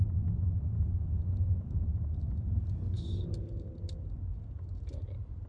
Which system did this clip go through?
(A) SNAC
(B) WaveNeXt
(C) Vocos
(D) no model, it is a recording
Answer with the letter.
D